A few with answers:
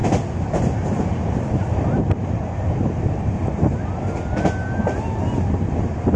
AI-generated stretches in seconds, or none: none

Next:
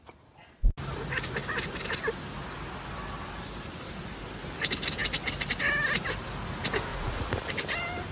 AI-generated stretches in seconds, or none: 6.9-7.4 (vocoder, Vocos)

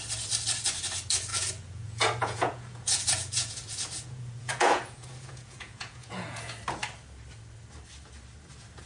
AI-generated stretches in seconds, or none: 1.3-6.5 (vocoder, Vocos)

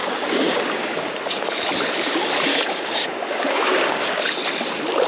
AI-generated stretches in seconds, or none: 0.0-1.2 (codec, DAC); 2.5-4.2